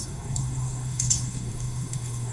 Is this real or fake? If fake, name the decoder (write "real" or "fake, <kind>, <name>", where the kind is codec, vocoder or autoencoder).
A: fake, codec, SNAC